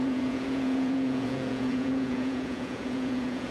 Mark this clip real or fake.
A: fake